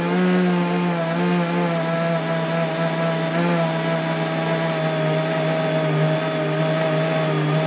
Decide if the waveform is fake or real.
real